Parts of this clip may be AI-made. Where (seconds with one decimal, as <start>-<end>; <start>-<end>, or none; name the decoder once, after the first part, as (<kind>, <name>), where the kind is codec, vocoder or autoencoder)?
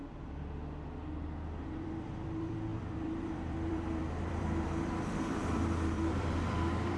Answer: 0.0-1.0 (vocoder, BigVGAN v2); 1.6-7.0